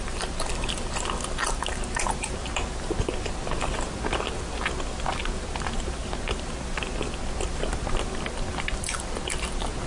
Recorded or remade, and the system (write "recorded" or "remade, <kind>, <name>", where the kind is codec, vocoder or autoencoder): recorded